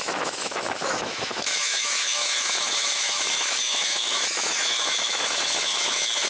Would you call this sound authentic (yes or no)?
no